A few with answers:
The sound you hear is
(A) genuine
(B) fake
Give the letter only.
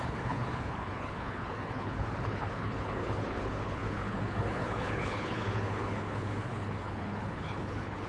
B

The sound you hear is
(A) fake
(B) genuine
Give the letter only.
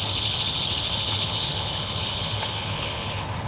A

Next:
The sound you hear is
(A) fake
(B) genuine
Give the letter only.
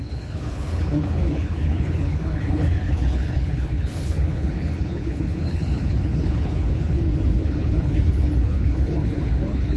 A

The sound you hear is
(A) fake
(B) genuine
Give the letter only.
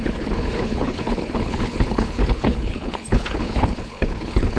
A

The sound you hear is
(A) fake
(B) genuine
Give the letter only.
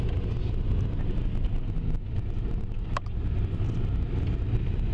B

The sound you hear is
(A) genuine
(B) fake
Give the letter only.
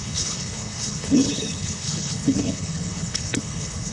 B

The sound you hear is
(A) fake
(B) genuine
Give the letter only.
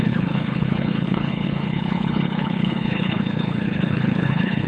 A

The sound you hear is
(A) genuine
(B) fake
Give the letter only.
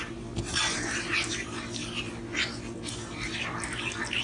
A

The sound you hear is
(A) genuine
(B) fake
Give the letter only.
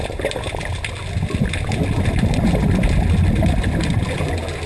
A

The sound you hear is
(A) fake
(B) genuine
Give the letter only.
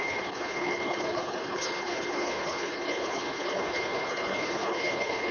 A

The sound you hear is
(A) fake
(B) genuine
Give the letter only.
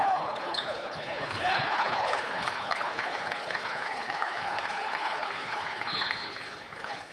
A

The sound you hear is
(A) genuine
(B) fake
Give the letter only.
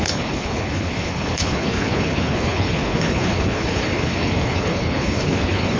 B